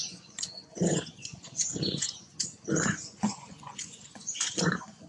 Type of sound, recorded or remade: remade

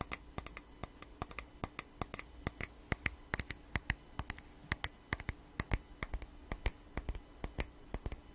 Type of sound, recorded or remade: recorded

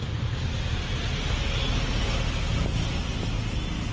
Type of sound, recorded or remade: recorded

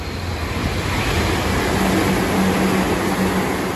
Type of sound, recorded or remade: recorded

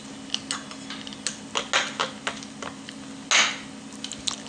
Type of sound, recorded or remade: recorded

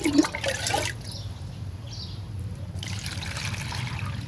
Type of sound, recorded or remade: recorded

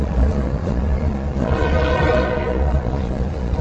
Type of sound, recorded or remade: remade